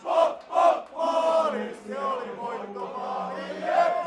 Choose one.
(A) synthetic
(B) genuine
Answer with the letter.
B